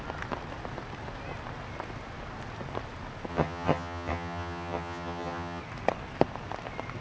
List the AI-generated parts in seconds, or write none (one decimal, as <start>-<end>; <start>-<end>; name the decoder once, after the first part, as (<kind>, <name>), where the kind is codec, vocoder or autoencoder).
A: 3.3-5.6 (vocoder, HiFi-GAN)